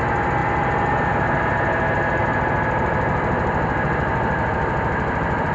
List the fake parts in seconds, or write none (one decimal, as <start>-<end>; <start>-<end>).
0.4-0.9; 2.2-5.5